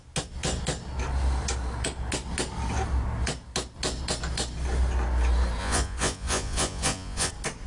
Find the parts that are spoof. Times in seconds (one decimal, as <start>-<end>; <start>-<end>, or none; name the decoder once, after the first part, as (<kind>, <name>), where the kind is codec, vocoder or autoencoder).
5.6-7.3 (vocoder, Vocos)